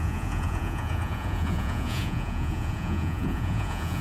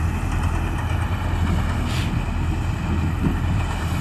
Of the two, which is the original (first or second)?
second